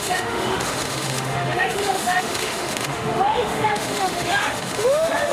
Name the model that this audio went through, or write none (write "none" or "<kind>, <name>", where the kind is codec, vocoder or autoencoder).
autoencoder, DAC-VAE